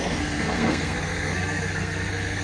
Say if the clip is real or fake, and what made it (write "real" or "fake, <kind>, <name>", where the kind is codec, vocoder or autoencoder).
fake, codec, SNAC